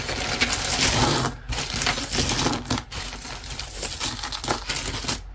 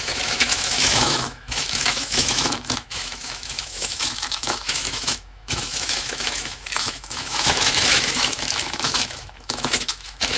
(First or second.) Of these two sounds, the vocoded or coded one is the second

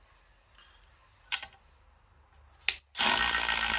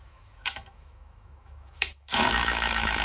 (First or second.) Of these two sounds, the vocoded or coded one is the second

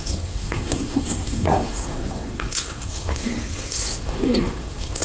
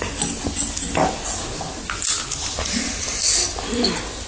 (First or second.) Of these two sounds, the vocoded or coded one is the first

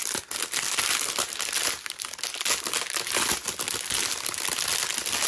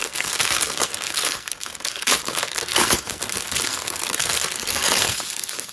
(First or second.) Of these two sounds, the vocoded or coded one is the second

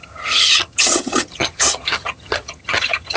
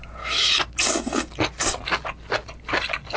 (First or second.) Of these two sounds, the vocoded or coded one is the first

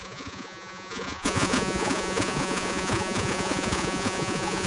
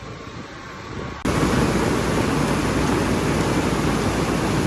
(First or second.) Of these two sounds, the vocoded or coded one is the first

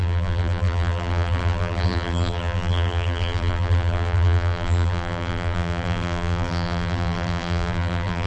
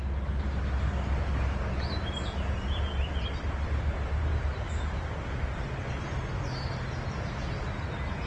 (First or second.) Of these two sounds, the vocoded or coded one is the first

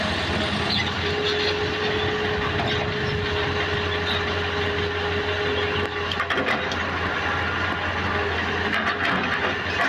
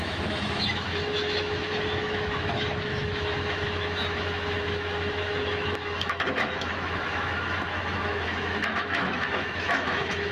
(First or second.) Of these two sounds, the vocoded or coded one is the second